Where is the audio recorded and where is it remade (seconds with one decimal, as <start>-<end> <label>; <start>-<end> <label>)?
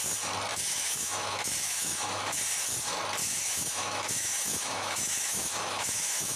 0.0-0.5 recorded; 0.5-2.4 remade; 2.4-3.2 recorded; 3.2-6.4 remade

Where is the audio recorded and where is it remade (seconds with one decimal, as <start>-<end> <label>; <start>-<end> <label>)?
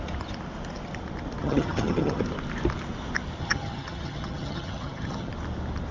0.0-1.4 recorded; 1.4-2.2 remade; 2.2-3.4 recorded; 3.4-5.3 remade; 5.3-5.9 recorded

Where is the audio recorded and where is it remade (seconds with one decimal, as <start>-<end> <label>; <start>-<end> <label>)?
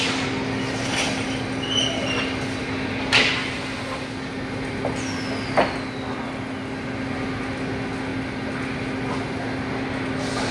0.0-10.5 recorded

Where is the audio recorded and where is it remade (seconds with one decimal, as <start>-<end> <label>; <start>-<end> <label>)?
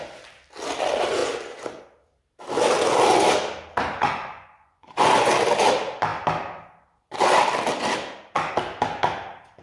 0.0-1.2 recorded; 1.2-1.8 remade; 1.8-4.0 recorded; 4.0-5.3 remade; 5.3-9.6 recorded